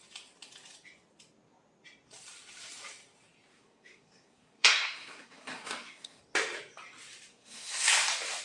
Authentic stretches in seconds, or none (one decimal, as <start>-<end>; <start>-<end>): 0.0-3.5; 6.2-7.3; 7.9-8.4